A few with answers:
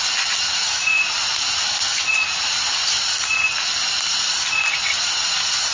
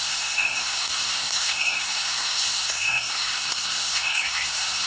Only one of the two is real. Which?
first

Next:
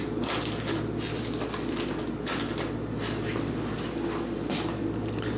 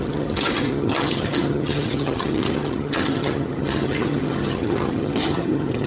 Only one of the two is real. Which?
first